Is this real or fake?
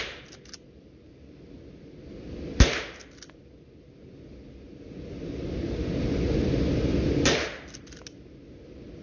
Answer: real